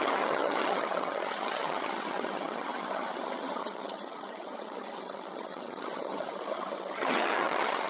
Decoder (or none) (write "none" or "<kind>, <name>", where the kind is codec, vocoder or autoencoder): vocoder, HiFi-GAN